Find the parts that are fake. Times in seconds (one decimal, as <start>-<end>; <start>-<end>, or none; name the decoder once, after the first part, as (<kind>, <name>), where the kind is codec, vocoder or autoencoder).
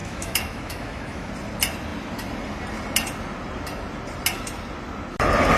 0.0-1.3 (autoencoder, DAC-VAE)